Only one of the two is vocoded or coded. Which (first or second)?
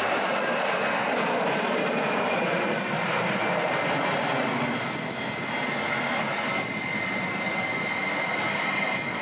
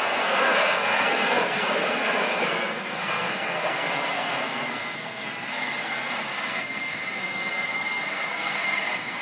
second